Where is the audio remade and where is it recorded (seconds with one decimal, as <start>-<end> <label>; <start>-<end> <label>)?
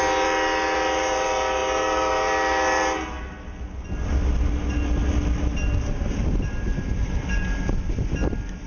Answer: 0.0-8.7 recorded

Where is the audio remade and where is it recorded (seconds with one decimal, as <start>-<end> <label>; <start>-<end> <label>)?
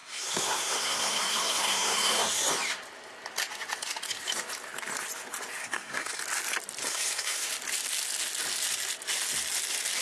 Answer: 0.0-2.5 remade; 2.5-5.6 recorded; 5.6-6.2 remade; 6.2-6.8 recorded; 6.8-7.5 remade; 7.5-10.0 recorded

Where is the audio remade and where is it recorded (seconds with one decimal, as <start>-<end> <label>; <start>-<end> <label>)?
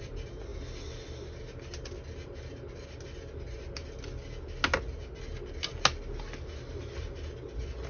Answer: 0.0-7.9 recorded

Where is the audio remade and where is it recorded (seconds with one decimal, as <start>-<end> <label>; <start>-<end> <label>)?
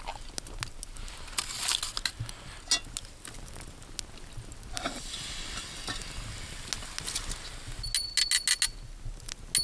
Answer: 0.0-9.6 recorded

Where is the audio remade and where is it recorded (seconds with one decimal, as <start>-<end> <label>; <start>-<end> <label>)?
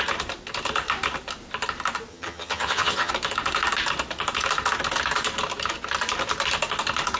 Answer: 0.0-2.1 recorded; 2.1-3.1 remade; 3.1-7.2 recorded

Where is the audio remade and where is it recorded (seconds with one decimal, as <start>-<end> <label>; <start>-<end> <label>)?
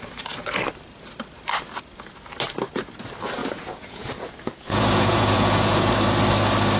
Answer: 0.0-3.4 recorded; 3.4-5.9 remade; 5.9-6.8 recorded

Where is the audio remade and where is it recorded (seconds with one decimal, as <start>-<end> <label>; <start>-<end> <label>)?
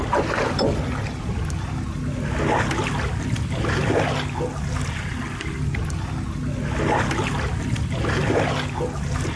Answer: 0.0-9.4 recorded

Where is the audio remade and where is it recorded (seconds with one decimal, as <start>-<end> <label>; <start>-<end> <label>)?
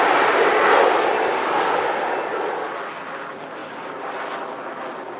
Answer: 0.0-5.2 recorded